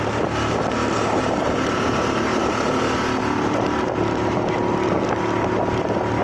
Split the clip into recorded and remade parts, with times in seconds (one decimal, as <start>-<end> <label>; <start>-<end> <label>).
0.0-6.2 recorded